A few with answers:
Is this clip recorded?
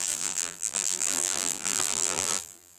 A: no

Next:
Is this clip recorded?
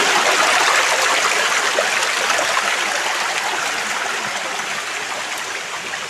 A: yes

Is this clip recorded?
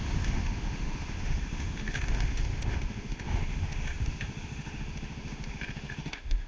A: no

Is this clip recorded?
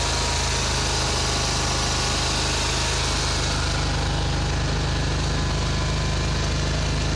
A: yes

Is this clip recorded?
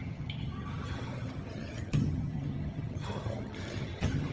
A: no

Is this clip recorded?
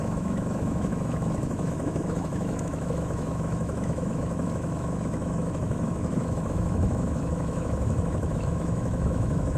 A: no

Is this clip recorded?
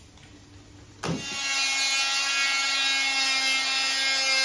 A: yes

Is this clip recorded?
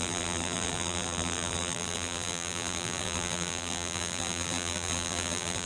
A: no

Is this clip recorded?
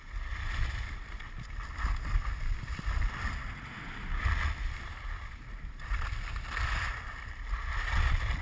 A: yes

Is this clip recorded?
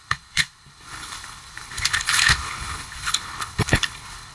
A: no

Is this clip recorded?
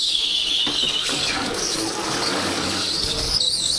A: no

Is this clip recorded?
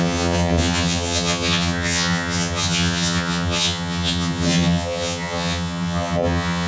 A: no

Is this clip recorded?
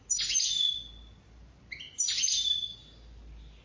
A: yes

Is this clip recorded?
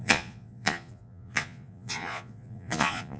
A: no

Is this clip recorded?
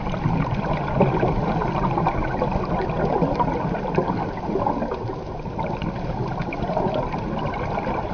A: yes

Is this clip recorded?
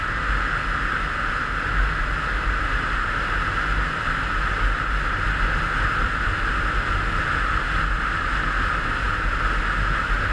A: yes